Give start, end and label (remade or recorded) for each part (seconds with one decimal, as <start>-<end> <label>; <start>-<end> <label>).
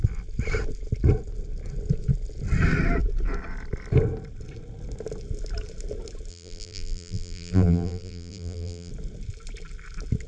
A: 0.0-6.3 recorded; 6.3-8.9 remade; 8.9-10.3 recorded